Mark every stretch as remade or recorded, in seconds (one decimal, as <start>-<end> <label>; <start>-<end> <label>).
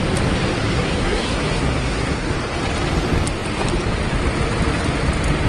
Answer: 0.0-0.7 recorded; 0.7-2.3 remade; 2.3-5.5 recorded